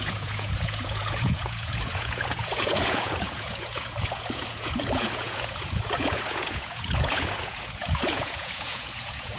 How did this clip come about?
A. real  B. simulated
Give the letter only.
B